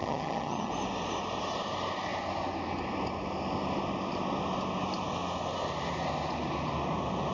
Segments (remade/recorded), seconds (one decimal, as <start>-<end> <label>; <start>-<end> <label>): 0.0-0.7 remade; 0.7-7.3 recorded